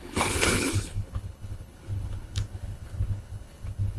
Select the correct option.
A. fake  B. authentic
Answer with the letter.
A